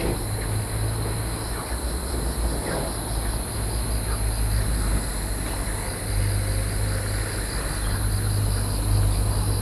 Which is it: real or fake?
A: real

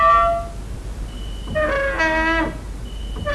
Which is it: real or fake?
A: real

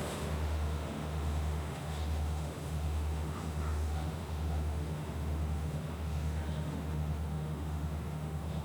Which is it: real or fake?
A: fake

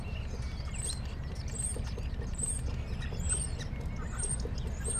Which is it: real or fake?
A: real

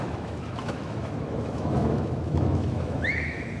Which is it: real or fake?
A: fake